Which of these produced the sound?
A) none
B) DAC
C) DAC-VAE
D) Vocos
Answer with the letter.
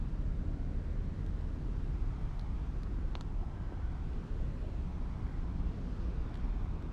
A